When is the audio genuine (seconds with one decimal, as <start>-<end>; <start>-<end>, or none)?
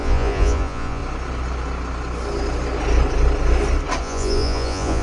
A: 1.0-4.0